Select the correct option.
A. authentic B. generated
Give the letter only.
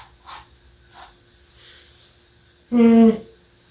A